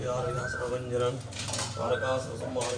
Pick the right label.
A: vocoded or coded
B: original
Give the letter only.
B